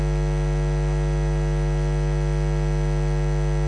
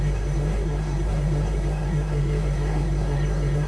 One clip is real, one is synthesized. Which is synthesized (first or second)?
second